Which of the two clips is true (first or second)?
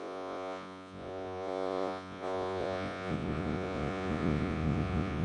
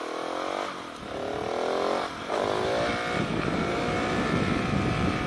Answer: second